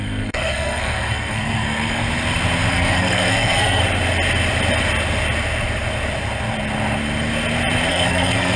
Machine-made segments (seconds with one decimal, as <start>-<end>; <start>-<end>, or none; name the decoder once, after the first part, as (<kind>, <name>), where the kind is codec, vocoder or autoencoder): 0.0-2.0 (codec, SNAC); 2.7-3.8; 7.9-8.6